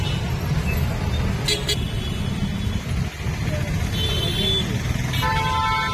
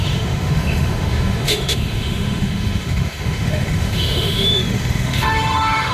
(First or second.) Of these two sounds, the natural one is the first